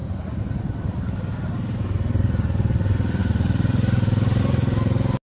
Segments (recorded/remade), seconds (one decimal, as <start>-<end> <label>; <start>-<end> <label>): 0.0-5.3 recorded